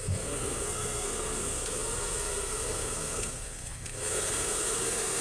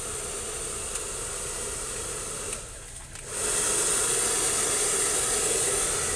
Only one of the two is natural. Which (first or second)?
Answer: second